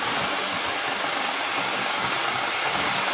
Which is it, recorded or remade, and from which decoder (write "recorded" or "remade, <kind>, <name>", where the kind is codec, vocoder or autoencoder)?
recorded